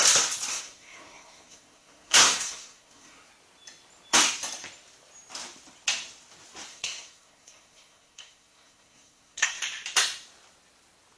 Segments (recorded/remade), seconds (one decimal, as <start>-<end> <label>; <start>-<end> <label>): 0.0-0.5 recorded; 0.5-3.3 remade; 3.3-6.7 recorded; 6.7-9.6 remade; 9.6-11.2 recorded

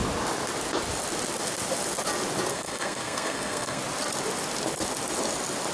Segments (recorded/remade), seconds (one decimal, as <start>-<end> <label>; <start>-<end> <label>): 0.0-2.5 recorded; 2.5-3.8 remade; 3.8-5.7 recorded

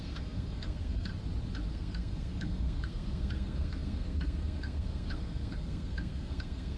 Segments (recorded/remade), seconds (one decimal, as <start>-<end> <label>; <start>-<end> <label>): 0.0-1.1 remade; 1.1-1.7 recorded; 1.7-6.8 remade

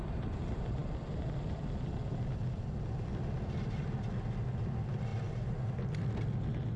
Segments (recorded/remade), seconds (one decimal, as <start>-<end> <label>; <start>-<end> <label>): 0.0-6.8 recorded

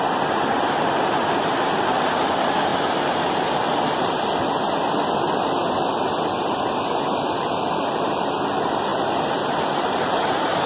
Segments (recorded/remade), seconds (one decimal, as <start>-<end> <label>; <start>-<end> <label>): 0.0-10.7 recorded

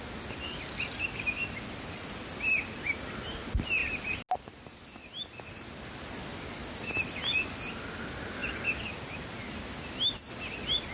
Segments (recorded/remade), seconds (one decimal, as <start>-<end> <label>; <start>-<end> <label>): 0.0-10.9 recorded

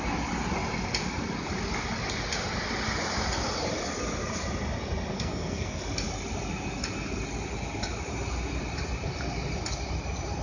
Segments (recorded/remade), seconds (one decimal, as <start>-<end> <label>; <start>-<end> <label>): 0.0-5.1 recorded; 5.1-5.8 remade; 5.8-10.4 recorded